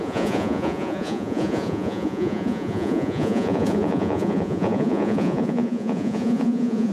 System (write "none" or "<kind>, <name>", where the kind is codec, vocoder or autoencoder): vocoder, Vocos